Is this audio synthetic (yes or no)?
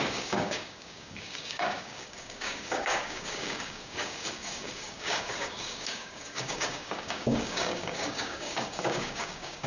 yes